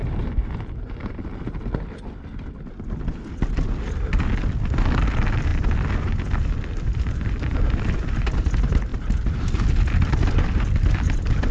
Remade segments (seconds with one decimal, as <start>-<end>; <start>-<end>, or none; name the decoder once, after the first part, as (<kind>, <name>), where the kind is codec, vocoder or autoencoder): none